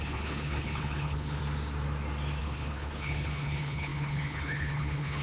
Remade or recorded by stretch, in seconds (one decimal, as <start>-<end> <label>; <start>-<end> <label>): 0.0-1.4 remade; 1.4-2.4 recorded; 2.4-5.2 remade